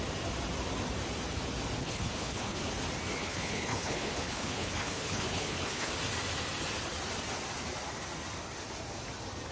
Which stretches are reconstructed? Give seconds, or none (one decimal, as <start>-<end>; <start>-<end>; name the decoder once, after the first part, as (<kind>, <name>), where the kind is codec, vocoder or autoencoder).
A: 1.8-2.7 (codec, HILCodec); 3.2-5.9